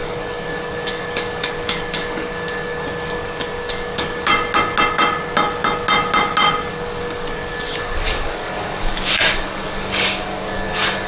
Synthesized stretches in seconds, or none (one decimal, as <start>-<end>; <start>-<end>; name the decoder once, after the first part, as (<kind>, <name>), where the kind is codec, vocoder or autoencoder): 0.0-4.3 (codec, DAC); 6.7-11.1